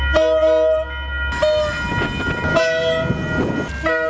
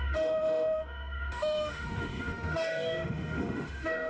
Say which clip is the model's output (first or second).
second